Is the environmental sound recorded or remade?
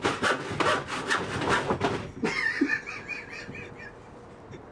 recorded